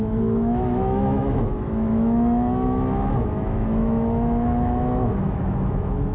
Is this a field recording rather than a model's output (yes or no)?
no